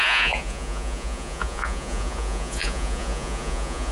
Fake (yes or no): yes